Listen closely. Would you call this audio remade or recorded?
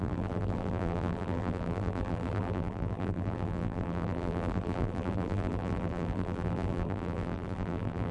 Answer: remade